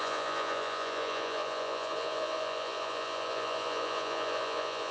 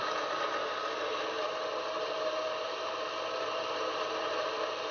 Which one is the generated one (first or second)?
first